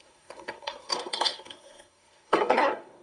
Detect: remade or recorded remade